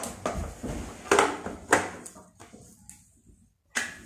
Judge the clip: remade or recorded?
recorded